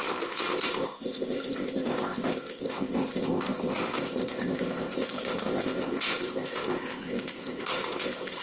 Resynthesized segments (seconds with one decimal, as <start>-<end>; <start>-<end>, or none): 0.0-8.4